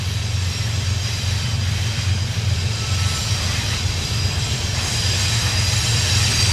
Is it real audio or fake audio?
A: fake